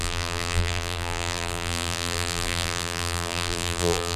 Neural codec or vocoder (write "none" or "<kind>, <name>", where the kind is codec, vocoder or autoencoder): vocoder, BigVGAN v2